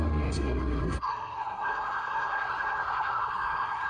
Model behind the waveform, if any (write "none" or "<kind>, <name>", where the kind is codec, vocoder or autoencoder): codec, SNAC